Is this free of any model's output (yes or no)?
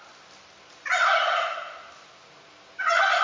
yes